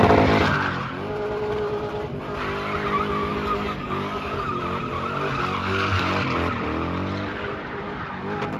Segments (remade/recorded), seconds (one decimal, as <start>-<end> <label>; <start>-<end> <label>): 0.0-3.3 recorded; 3.3-4.5 remade; 4.5-5.6 recorded; 5.6-6.1 remade; 6.1-8.6 recorded